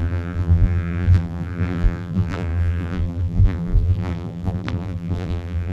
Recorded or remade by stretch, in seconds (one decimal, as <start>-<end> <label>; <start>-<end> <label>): 0.0-5.7 remade